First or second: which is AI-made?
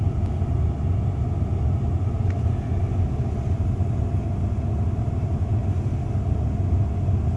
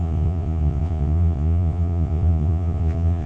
second